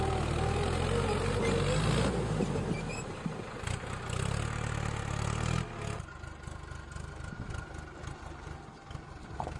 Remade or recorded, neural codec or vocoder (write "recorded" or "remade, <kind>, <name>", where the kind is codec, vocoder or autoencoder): recorded